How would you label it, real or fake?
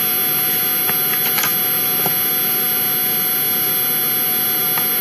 real